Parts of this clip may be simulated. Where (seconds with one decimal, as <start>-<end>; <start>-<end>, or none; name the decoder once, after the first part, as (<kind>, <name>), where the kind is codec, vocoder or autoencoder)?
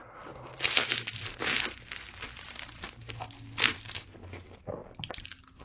none